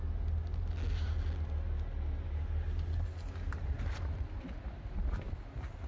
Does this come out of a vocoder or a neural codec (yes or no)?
no